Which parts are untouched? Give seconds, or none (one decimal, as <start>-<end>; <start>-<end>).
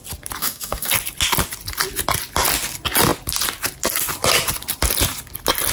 0.0-0.4; 0.9-5.7